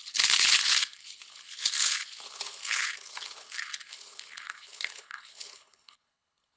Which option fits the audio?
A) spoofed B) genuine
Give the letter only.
A